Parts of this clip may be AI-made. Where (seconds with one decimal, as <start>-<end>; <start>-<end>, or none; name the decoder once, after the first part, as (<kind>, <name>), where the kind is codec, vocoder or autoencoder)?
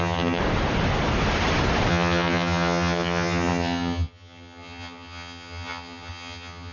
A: 0.0-0.4 (vocoder, HiFi-GAN); 1.9-6.7